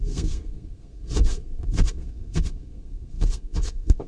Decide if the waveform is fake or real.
fake